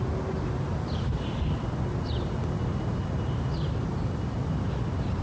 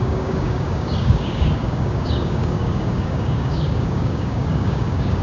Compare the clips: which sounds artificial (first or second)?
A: second